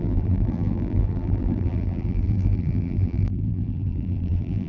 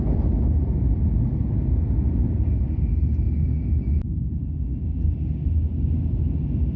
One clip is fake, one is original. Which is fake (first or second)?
first